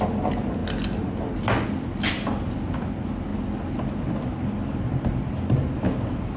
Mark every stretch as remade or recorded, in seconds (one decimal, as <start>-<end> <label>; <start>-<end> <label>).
0.0-6.4 recorded